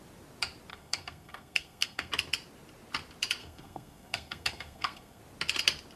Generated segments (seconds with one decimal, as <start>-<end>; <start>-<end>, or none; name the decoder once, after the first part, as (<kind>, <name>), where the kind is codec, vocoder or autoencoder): 0.7-2.1 (codec, SNAC); 3.4-5.2